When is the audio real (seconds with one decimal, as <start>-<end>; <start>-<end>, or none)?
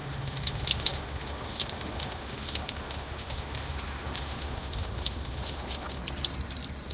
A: 6.0-6.9